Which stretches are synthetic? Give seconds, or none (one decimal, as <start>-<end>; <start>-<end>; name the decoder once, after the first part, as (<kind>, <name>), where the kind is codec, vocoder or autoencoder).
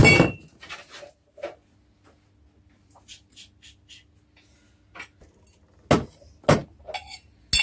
none